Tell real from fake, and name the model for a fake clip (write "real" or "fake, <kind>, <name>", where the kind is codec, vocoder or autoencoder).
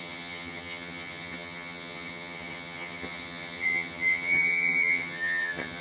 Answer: fake, vocoder, HiFi-GAN